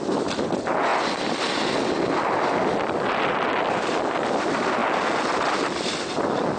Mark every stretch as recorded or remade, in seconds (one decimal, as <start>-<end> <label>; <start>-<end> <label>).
0.0-6.6 recorded

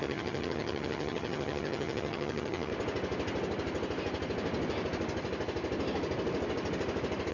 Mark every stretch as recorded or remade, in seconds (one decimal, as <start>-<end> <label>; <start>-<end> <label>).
0.0-2.7 remade; 2.7-7.3 recorded

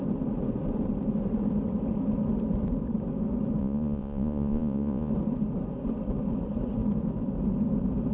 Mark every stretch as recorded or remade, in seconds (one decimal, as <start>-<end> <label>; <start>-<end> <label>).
0.0-3.6 recorded; 3.6-5.1 remade; 5.1-8.1 recorded

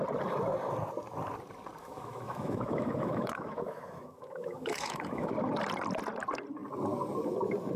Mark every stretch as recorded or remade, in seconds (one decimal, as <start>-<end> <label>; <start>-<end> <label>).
0.0-1.8 recorded; 1.8-5.3 remade; 5.3-7.8 recorded

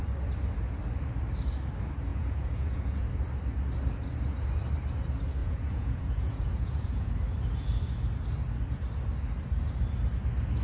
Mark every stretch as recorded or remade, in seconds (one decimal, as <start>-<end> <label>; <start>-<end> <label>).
0.0-2.1 recorded; 2.1-3.1 remade; 3.1-5.4 recorded; 5.4-7.1 remade; 7.1-10.6 recorded